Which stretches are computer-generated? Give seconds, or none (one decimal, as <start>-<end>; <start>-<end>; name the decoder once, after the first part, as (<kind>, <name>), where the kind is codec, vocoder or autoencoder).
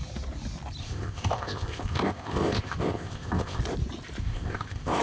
0.8-3.6 (codec, ZipCodec); 4.2-5.0